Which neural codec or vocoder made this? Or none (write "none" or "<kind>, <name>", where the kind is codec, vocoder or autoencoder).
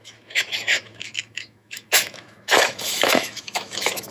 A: autoencoder, DAC-VAE